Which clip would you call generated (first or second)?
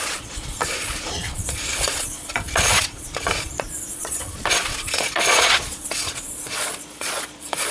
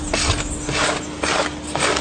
first